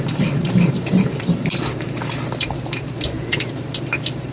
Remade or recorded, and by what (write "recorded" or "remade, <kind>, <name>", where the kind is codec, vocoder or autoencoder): remade, vocoder, BigVGAN v2